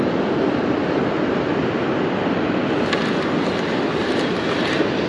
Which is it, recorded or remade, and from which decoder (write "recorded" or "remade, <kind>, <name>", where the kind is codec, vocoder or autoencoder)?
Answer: recorded